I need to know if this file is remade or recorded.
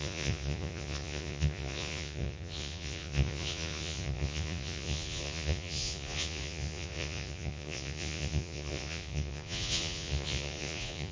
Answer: remade